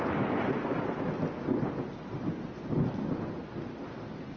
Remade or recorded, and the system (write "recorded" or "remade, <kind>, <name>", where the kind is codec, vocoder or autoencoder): recorded